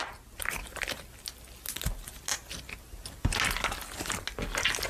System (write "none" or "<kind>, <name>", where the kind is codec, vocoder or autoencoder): none